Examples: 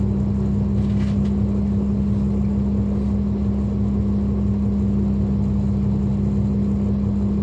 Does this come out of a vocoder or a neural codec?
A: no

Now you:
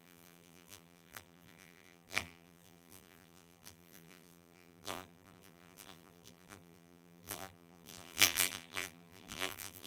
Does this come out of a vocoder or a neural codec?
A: yes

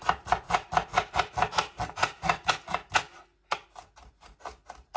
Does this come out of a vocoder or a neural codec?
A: no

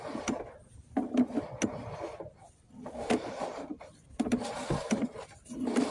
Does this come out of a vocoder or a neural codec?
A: no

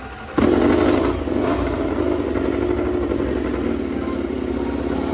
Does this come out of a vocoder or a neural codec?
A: no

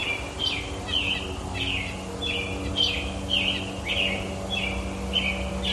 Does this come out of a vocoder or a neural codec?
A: yes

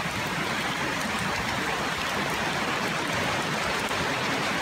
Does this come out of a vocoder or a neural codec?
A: yes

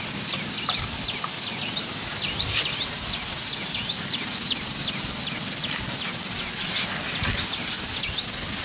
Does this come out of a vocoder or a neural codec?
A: no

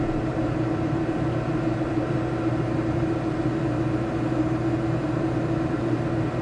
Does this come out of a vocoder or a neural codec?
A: yes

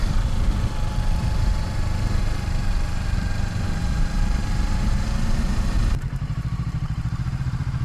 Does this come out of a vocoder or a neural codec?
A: yes